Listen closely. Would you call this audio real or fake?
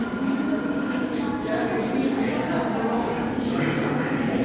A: real